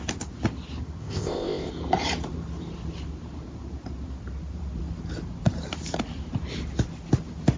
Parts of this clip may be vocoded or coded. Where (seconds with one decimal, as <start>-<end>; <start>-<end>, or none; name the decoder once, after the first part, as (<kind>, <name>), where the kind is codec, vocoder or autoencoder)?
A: 1.0-1.7 (codec, ZipCodec)